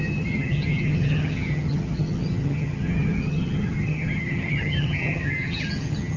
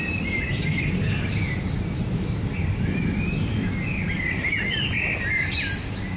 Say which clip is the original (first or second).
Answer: second